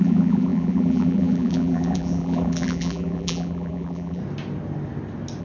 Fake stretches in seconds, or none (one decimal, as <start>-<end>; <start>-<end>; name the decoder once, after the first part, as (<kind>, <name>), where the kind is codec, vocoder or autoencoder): 0.0-4.2 (vocoder, BigVGAN v2)